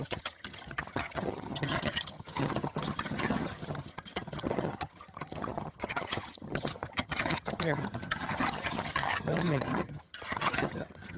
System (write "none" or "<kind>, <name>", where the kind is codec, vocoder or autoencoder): vocoder, HiFi-GAN